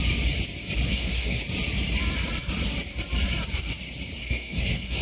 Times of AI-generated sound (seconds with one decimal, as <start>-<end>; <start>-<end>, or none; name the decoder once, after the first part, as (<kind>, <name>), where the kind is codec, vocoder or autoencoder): 0.9-1.4 (codec, SNAC); 4.2-5.0

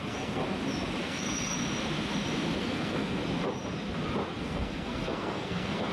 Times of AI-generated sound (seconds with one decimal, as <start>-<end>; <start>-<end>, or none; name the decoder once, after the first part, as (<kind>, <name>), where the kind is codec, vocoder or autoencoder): 0.0-0.4 (codec, SNAC); 1.0-1.5; 2.6-3.2; 4.4-5.9